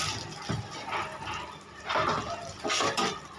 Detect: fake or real fake